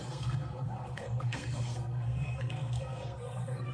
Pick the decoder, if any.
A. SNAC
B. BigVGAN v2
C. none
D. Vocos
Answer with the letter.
A